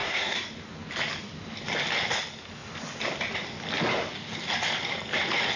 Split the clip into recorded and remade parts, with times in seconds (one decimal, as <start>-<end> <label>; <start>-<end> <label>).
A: 0.0-0.5 remade; 0.5-5.6 recorded